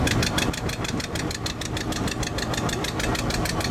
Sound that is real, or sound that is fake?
real